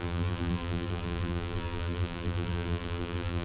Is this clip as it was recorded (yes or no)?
no